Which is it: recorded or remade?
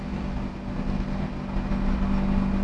recorded